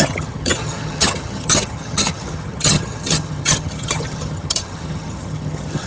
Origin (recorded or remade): remade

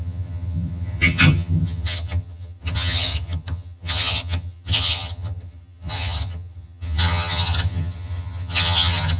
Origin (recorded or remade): remade